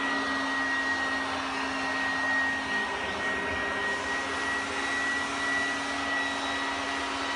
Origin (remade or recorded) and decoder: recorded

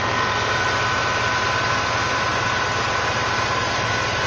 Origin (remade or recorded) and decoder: recorded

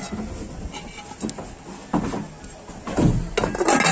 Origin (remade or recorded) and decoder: recorded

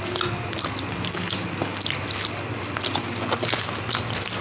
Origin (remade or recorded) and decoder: recorded